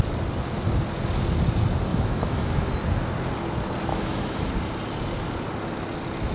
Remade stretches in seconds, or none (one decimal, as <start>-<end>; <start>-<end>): 1.9-2.7; 3.9-4.5